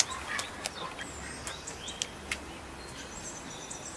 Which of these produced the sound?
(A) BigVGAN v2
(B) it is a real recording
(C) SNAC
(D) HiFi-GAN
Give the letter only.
B